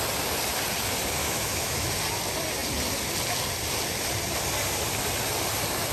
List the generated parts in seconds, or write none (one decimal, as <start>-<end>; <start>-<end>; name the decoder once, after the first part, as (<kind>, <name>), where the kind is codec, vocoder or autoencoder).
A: 1.2-1.9 (autoencoder, DAC-VAE)